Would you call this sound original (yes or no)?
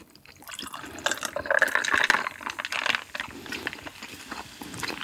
yes